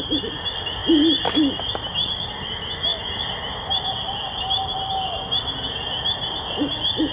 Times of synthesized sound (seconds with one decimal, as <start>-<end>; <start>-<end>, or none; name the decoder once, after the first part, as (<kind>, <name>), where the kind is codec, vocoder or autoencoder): none